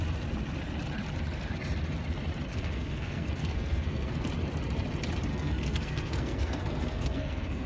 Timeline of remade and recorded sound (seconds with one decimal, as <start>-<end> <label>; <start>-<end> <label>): 0.0-2.5 recorded; 2.5-4.3 remade; 4.3-5.3 recorded; 5.3-7.7 remade